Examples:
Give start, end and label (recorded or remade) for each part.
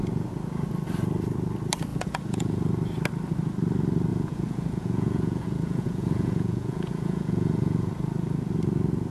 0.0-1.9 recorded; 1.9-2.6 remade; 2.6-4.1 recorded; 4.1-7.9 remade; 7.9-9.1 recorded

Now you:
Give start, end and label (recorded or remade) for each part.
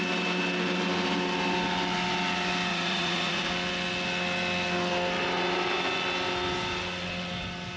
0.0-2.7 recorded; 2.7-3.5 remade; 3.5-7.8 recorded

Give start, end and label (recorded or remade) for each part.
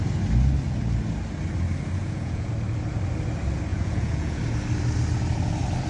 0.0-2.0 recorded; 2.0-2.5 remade; 2.5-3.7 recorded; 3.7-4.4 remade; 4.4-5.9 recorded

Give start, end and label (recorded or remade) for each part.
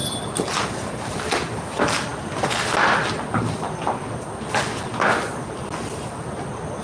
0.0-6.8 recorded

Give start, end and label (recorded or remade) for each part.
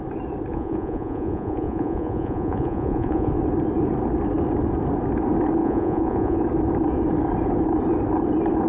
0.0-0.5 recorded; 0.5-3.3 remade; 3.3-5.6 recorded; 5.6-6.4 remade; 6.4-8.7 recorded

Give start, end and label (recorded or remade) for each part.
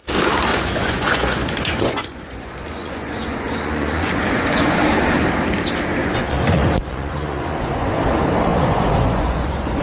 0.0-0.5 recorded; 0.5-4.8 remade; 4.8-6.0 recorded; 6.0-8.0 remade; 8.0-8.5 recorded; 8.5-9.8 remade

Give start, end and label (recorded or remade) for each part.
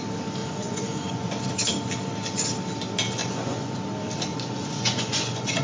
0.0-0.4 recorded; 0.4-1.4 remade; 1.4-3.2 recorded; 3.2-3.8 remade; 3.8-4.3 recorded; 4.3-5.6 remade